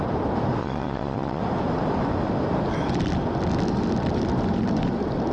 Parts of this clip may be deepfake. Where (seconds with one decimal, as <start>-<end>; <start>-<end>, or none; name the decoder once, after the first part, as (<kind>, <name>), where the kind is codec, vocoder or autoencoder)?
0.6-1.4 (vocoder, Vocos)